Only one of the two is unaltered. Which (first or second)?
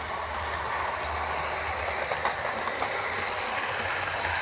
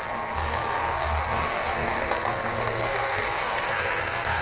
first